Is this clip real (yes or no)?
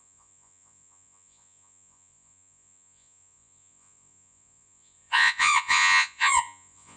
no